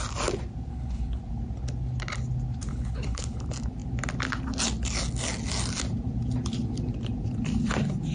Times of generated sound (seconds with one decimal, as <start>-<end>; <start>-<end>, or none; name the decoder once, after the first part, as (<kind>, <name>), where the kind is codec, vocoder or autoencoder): 0.7-1.2 (codec, HILCodec); 2.7-3.4